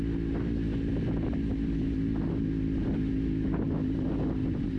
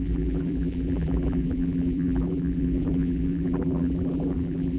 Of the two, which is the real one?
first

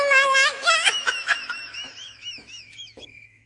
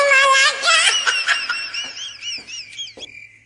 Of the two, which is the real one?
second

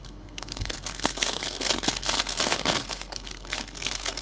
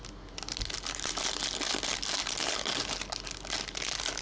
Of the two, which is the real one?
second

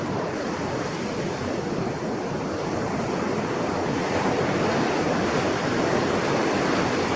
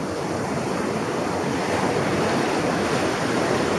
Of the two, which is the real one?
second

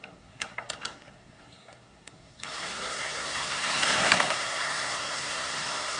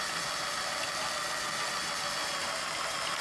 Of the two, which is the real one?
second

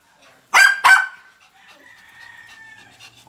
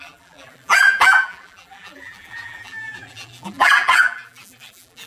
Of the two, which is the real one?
first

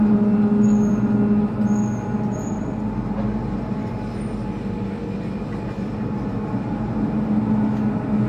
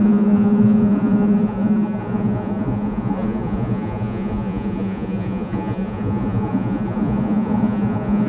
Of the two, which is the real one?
first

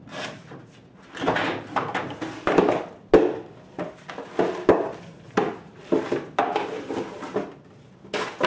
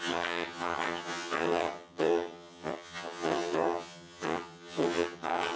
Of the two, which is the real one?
first